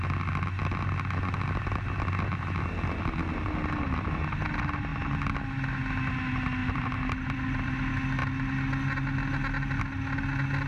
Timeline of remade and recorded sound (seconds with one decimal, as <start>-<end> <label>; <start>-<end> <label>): 0.0-6.6 recorded; 6.6-7.7 remade; 7.7-10.7 recorded